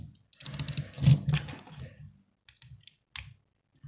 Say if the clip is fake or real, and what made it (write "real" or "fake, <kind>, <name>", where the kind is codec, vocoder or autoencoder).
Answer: real